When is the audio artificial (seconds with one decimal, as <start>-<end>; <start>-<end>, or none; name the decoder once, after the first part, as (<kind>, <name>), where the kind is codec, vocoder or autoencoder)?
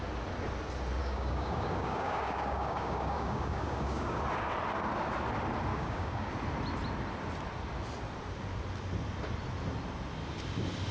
1.0-4.2 (codec, DAC); 5.7-6.3